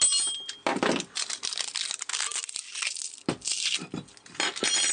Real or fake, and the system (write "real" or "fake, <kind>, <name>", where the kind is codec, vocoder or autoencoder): real